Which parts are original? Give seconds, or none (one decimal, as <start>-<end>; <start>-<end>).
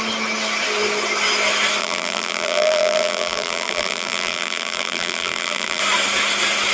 0.0-1.8; 5.8-6.7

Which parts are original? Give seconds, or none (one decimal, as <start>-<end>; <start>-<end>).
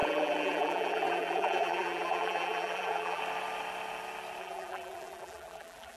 3.2-4.4